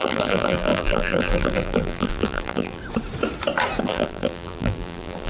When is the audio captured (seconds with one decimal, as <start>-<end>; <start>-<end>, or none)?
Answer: 2.8-3.8